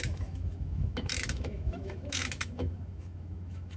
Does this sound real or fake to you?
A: fake